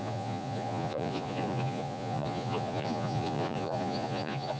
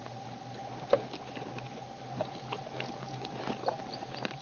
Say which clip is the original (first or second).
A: second